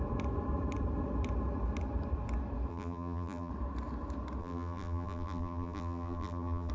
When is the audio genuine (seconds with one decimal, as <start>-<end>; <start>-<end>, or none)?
0.0-2.7; 3.5-4.4